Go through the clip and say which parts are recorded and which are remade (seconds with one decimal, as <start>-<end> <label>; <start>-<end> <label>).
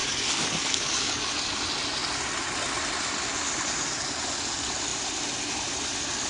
0.0-1.3 remade; 1.3-6.3 recorded